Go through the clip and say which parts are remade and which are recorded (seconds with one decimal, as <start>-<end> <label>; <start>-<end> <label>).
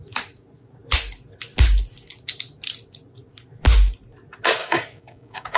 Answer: 0.0-4.6 recorded; 4.6-5.6 remade